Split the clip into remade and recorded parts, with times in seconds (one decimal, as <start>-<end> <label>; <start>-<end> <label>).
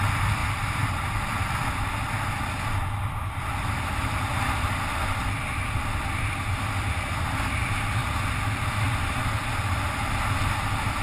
0.0-11.0 recorded